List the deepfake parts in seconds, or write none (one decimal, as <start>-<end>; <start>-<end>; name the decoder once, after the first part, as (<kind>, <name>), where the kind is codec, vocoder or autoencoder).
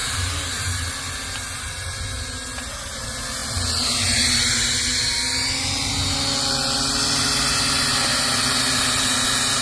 none